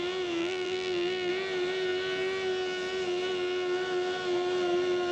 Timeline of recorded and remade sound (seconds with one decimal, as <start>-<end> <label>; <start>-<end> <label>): 0.0-0.4 recorded; 0.4-1.3 remade; 1.3-5.1 recorded